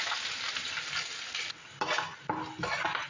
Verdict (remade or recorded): recorded